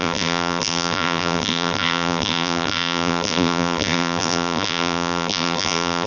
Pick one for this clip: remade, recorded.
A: remade